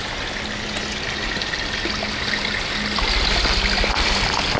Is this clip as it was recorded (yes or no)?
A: yes